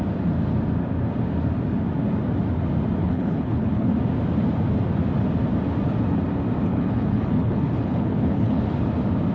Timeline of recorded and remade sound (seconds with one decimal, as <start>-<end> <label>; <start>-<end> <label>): 0.0-3.0 recorded; 3.0-3.9 remade; 3.9-6.7 recorded; 6.7-8.6 remade; 8.6-9.3 recorded